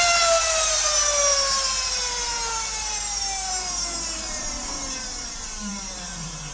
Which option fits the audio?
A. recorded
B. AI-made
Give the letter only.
B